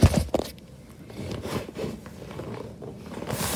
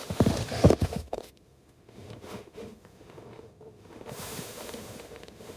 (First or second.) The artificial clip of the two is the second